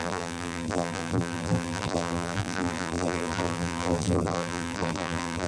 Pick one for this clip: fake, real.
fake